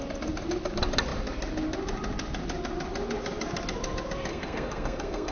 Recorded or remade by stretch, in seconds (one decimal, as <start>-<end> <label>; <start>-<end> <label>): 0.0-4.3 recorded; 4.3-5.3 remade